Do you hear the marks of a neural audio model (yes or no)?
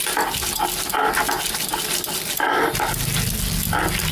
no